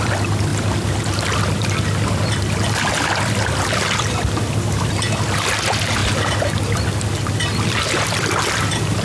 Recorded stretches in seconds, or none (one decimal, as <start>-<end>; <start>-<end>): 6.0-7.3